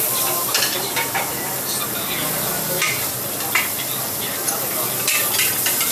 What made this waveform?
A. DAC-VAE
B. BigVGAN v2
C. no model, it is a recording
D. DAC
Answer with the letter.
C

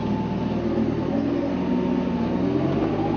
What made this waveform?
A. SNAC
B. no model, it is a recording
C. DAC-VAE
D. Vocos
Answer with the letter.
B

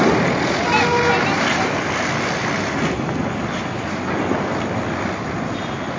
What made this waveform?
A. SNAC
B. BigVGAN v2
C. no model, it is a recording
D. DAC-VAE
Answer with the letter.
C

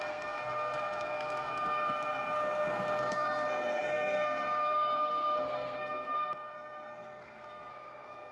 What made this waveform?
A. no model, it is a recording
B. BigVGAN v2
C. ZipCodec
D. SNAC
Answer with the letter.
D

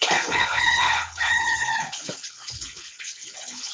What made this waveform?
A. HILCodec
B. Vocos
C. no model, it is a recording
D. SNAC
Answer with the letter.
A